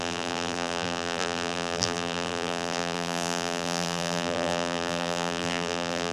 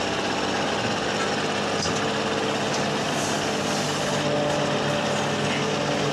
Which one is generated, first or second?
first